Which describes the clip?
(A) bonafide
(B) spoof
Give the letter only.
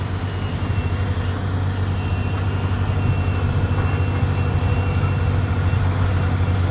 A